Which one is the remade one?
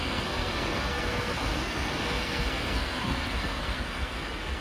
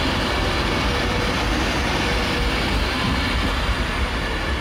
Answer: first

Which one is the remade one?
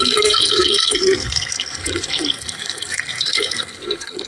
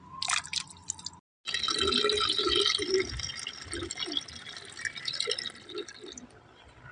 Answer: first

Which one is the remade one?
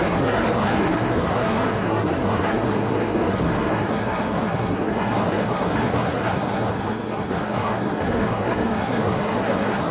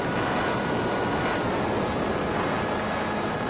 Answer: first